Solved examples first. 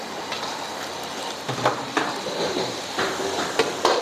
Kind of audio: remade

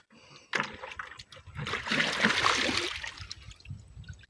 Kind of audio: recorded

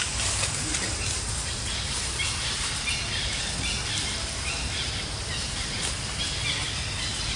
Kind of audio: recorded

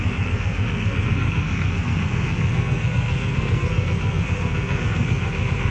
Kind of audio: remade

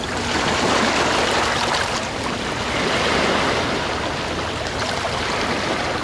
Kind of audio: recorded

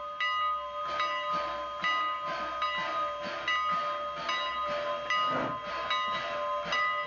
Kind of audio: recorded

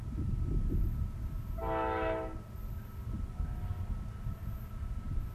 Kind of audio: recorded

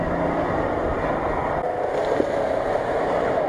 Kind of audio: recorded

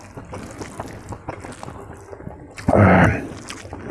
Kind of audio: recorded